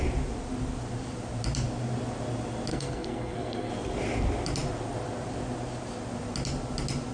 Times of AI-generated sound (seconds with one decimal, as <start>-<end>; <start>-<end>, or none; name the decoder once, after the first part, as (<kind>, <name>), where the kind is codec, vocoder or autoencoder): 2.7-3.7 (codec, SNAC)